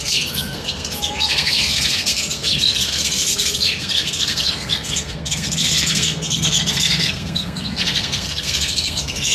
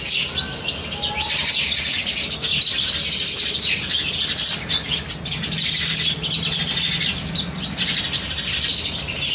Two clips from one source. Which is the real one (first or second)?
second